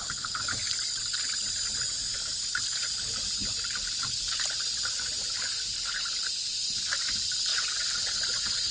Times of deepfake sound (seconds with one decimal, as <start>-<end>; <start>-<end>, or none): 0.0-0.6; 7.5-8.7